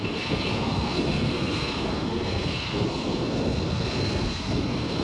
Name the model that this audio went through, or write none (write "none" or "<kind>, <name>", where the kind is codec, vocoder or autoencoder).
codec, SNAC